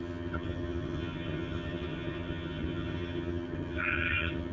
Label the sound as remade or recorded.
remade